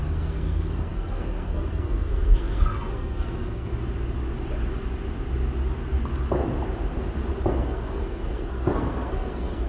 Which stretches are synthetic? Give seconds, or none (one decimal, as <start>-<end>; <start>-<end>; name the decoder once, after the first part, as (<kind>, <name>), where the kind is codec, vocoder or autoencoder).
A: 0.0-3.7 (codec, SNAC); 7.5-9.7